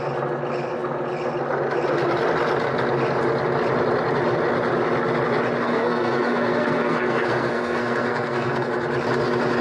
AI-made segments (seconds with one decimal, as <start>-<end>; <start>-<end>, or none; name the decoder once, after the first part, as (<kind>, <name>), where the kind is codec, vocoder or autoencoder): 5.6-8.7 (codec, SNAC)